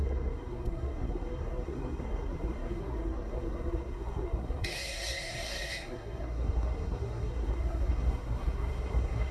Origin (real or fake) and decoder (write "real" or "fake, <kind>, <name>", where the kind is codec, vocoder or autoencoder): fake, codec, SNAC